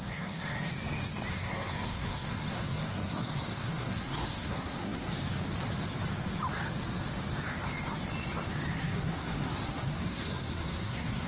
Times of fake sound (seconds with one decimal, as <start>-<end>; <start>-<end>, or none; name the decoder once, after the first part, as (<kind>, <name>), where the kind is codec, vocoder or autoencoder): 0.0-0.7 (codec, SNAC); 1.3-5.1; 8.8-11.3